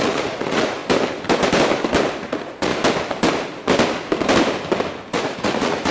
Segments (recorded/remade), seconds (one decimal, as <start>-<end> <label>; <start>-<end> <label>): 0.0-0.8 remade; 0.8-2.2 recorded; 2.2-2.7 remade; 2.7-5.1 recorded; 5.1-5.9 remade